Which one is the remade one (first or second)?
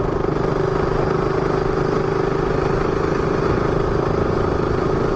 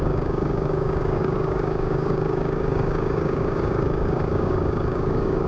second